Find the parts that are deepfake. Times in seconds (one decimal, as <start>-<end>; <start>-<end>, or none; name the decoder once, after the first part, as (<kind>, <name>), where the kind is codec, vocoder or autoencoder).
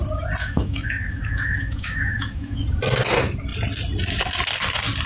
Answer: 0.4-2.6 (autoencoder, DAC-VAE)